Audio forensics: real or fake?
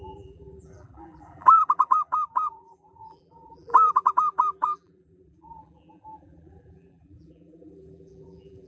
fake